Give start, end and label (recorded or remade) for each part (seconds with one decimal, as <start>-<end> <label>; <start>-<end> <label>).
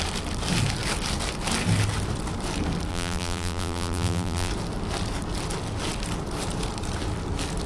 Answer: 0.0-2.9 recorded; 2.9-4.5 remade; 4.5-7.7 recorded